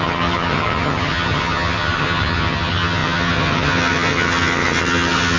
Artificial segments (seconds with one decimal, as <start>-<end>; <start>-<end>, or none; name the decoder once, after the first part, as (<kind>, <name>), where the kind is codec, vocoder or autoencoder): 0.0-5.4 (vocoder, HiFi-GAN)